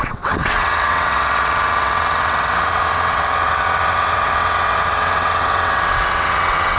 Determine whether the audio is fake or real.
fake